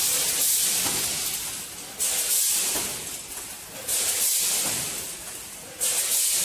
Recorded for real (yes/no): yes